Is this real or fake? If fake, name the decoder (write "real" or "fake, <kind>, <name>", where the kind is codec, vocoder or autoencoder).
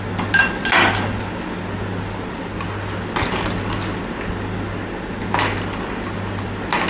real